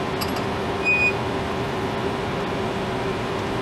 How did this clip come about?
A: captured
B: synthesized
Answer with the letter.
A